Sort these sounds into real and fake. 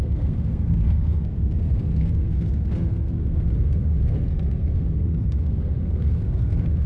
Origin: fake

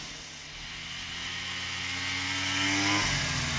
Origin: real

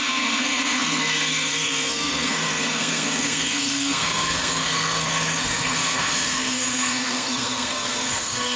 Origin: fake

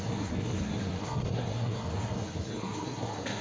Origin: fake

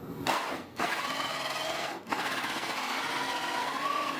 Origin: fake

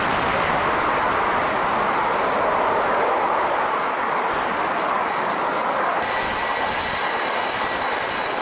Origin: real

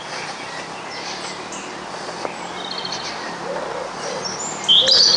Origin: real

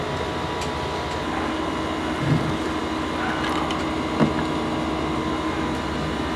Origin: real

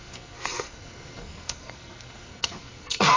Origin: fake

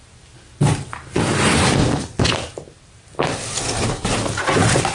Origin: real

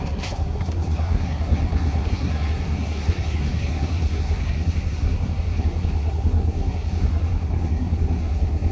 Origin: fake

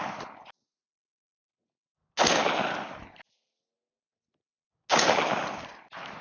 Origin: real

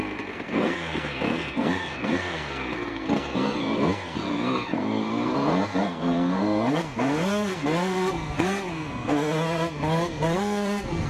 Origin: fake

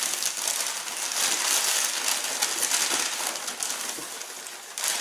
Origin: real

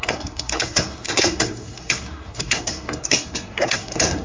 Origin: fake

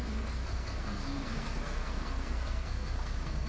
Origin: fake